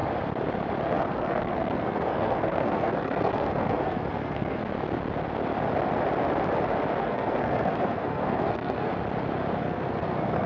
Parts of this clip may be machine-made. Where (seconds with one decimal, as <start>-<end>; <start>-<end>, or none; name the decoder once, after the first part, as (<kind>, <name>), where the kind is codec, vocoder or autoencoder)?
0.8-4.6 (codec, SNAC); 7.0-8.9; 9.6-10.5